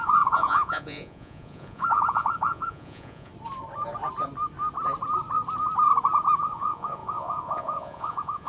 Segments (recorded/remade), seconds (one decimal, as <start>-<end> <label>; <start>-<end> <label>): 0.0-3.3 remade; 3.3-6.4 recorded; 6.4-8.5 remade